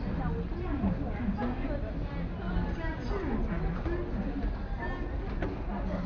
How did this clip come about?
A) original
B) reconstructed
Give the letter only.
A